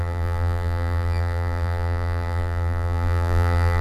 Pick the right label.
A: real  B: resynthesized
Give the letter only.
B